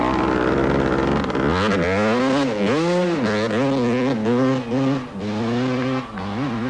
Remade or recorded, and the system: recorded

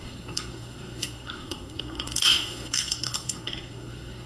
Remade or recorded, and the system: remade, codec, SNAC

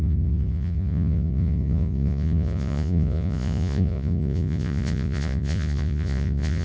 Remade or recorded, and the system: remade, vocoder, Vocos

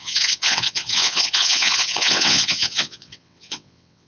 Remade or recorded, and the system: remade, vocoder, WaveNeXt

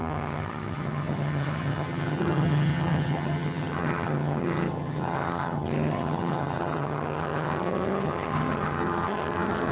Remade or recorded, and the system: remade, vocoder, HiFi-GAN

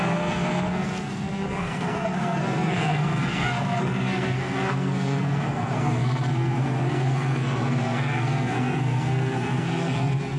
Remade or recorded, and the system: remade, codec, SNAC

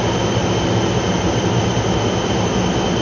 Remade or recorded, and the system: recorded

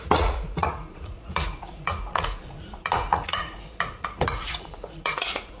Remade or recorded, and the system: remade, vocoder, Vocos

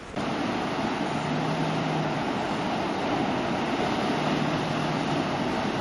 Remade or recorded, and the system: recorded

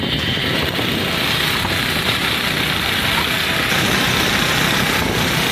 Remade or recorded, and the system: recorded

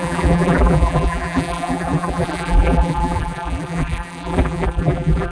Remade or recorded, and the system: remade, vocoder, BigVGAN v2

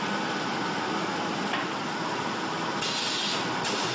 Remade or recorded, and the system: recorded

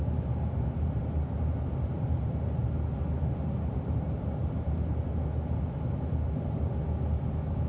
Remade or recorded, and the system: recorded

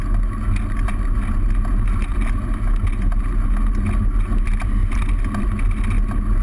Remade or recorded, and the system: recorded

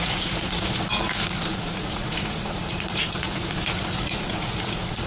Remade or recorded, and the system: remade, vocoder, Vocos